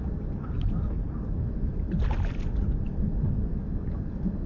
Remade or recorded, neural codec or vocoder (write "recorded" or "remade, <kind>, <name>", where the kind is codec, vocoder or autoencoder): recorded